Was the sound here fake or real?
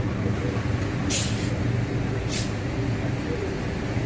real